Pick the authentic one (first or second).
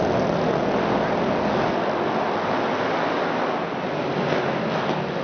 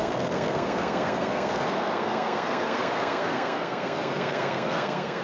first